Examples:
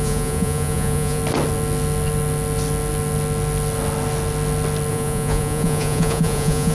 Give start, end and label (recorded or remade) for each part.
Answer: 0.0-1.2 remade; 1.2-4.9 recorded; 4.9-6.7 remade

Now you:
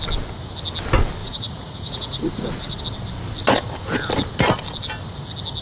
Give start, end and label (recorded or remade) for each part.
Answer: 0.0-1.2 recorded; 1.2-2.8 remade; 2.8-5.6 recorded